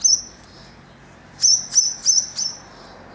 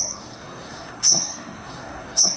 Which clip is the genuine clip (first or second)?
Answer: first